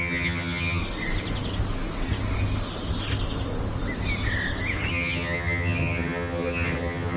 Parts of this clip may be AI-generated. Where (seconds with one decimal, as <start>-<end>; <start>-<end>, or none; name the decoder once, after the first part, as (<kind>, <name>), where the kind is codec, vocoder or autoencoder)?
0.0-0.8 (vocoder, HiFi-GAN); 4.9-7.2